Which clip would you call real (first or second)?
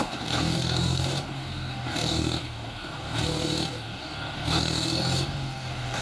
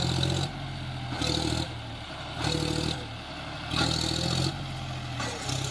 second